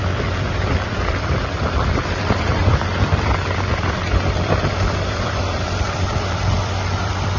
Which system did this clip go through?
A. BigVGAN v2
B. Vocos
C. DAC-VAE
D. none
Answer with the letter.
A